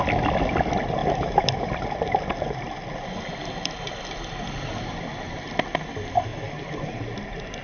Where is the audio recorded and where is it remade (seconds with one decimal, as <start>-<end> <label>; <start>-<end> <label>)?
0.0-1.0 recorded; 1.0-1.7 remade; 1.7-7.6 recorded